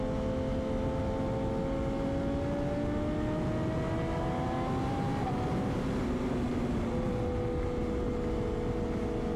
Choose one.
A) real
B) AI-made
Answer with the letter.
A